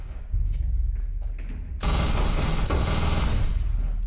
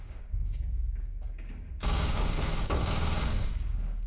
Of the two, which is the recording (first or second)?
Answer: first